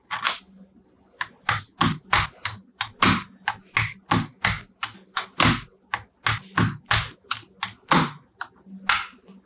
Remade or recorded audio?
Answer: recorded